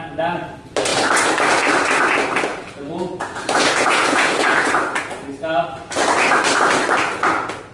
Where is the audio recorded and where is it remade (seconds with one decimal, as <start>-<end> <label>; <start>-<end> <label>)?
0.0-2.5 recorded; 2.5-4.7 remade; 4.7-7.7 recorded